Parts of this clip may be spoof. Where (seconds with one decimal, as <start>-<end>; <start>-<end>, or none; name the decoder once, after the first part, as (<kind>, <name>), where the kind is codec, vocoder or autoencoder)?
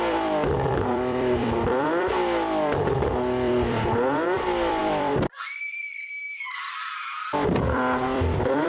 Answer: 0.0-8.7 (vocoder, BigVGAN v2)